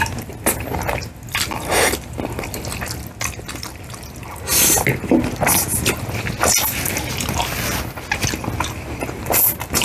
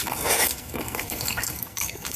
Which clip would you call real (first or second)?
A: first